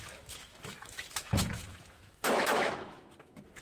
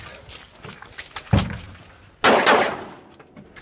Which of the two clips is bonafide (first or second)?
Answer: second